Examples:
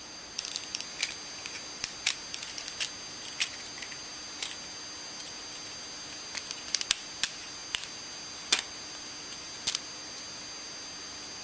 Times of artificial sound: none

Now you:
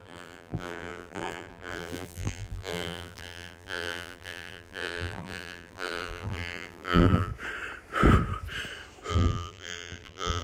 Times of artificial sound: 0.0-7.3 (vocoder, BigVGAN v2); 9.1-10.4

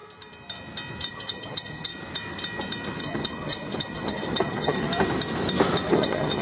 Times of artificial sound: 1.1-1.9 (vocoder, HiFi-GAN); 3.0-4.9; 5.9-6.4

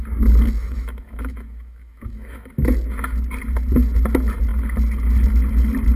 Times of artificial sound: 0.6-2.5 (autoencoder, DAC-VAE)